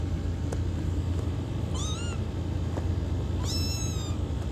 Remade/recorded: recorded